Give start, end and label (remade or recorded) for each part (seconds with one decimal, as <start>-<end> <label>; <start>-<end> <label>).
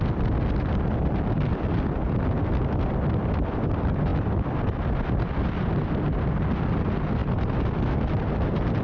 0.0-8.8 recorded